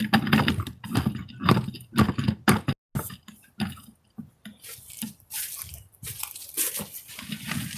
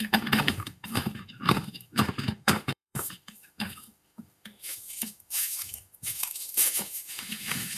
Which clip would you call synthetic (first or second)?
second